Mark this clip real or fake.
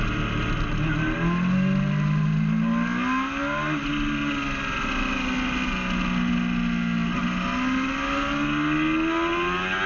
real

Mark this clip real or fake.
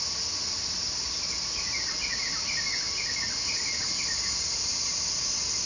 real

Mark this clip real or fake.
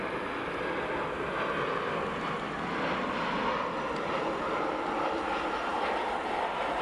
real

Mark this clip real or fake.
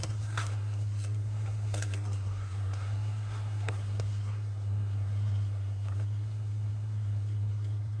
fake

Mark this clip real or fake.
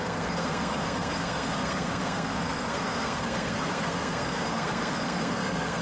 fake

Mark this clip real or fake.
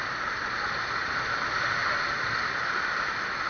real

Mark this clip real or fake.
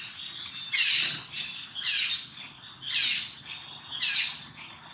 real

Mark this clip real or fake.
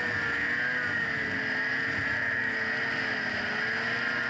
real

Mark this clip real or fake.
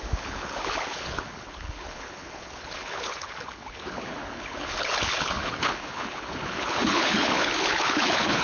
fake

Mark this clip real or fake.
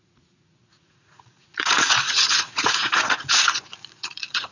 fake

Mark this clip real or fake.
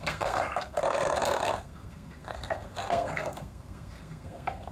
fake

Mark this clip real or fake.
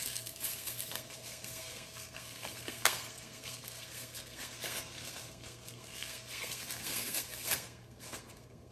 fake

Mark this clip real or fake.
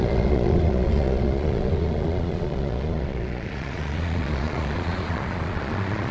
fake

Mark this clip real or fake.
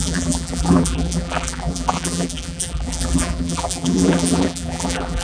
fake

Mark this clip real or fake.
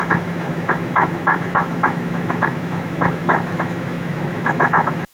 fake